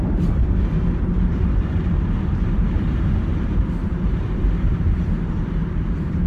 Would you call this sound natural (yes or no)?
no